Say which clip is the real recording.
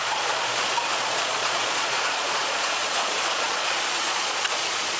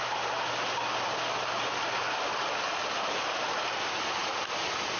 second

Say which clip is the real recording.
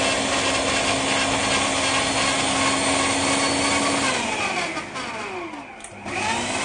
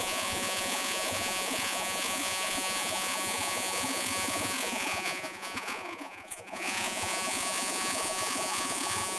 first